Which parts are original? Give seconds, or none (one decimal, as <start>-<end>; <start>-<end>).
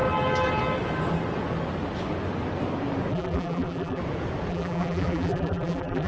0.0-3.1; 4.0-4.5